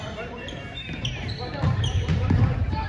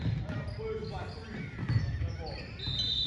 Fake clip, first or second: first